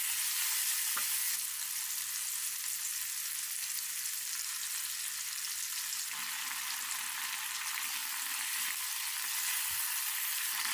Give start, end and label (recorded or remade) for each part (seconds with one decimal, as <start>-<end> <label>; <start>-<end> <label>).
0.0-10.7 recorded